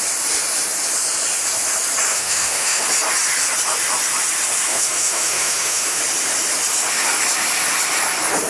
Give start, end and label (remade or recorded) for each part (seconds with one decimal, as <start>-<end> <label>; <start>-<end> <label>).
0.0-2.1 recorded; 2.1-2.8 remade; 2.8-4.7 recorded; 4.7-6.0 remade; 6.0-8.5 recorded